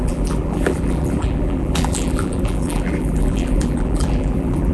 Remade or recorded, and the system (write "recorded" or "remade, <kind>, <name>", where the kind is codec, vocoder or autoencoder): remade, vocoder, BigVGAN v2